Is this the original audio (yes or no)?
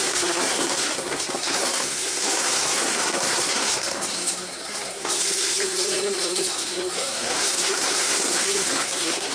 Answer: no